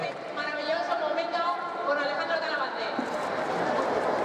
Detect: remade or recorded recorded